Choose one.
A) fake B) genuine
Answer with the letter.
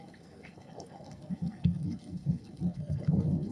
A